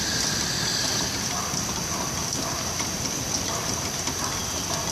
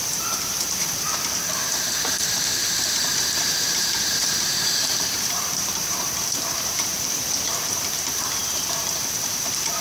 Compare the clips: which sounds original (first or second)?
first